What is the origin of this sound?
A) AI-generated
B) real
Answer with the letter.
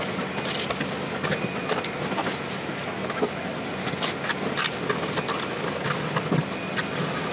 B